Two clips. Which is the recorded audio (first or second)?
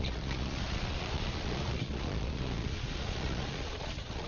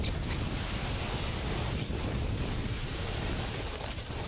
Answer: second